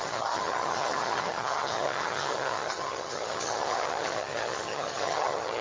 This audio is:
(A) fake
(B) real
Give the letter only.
A